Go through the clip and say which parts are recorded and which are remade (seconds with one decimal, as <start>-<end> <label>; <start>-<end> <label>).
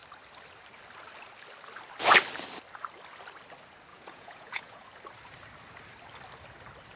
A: 0.0-3.9 recorded; 3.9-4.9 remade; 4.9-7.0 recorded